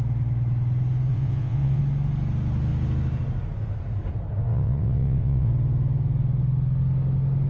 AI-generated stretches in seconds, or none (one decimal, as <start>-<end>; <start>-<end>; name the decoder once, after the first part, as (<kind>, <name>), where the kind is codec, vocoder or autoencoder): 1.1-1.8 (vocoder, WaveNeXt); 4.5-5.5